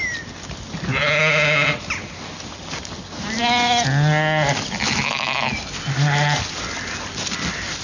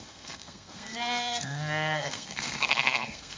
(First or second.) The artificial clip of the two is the second